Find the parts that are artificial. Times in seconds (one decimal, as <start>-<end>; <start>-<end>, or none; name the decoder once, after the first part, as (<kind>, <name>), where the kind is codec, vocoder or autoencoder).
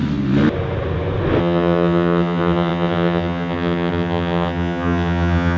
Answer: 1.4-5.6 (vocoder, HiFi-GAN)